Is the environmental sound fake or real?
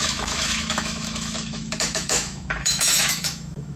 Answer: fake